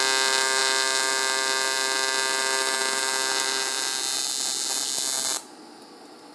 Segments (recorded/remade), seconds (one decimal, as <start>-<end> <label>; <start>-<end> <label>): 0.0-6.3 recorded